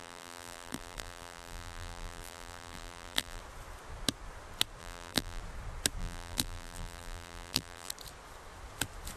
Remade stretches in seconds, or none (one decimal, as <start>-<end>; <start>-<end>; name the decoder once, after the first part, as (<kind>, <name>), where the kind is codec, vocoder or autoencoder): 0.0-3.4 (vocoder, BigVGAN v2); 4.8-5.4; 6.0-7.9